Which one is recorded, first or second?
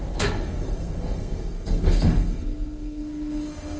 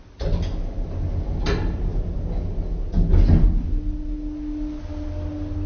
second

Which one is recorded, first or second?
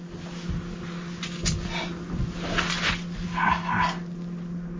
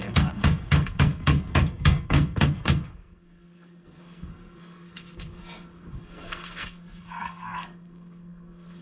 first